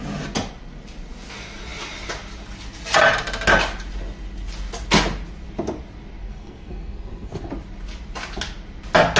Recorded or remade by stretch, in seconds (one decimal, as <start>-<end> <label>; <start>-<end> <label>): 0.0-6.2 recorded; 6.2-7.5 remade; 7.5-9.2 recorded